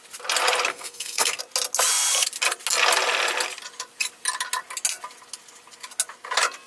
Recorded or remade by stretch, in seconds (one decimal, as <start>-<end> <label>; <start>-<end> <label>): 0.0-0.7 recorded; 0.7-1.4 remade; 1.4-6.7 recorded